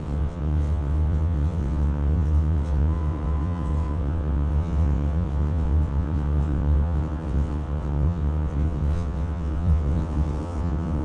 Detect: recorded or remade remade